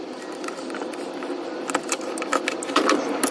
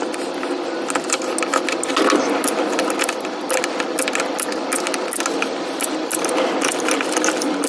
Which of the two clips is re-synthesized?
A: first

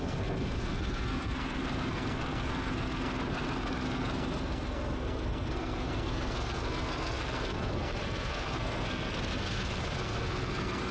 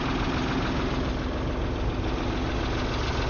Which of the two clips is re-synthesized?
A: first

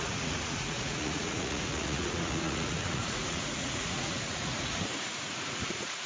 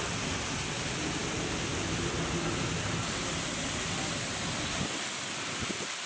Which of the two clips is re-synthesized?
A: first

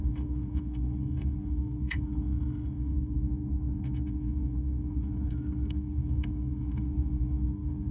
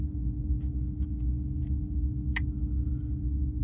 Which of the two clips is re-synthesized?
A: first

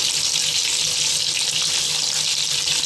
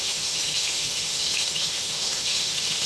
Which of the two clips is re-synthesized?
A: second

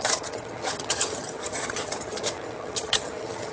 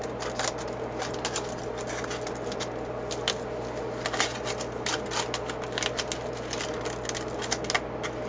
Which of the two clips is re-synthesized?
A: first